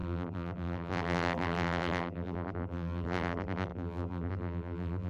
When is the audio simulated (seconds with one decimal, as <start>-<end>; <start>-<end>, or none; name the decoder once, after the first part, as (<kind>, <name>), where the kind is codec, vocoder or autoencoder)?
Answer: 0.0-5.1 (vocoder, BigVGAN v2)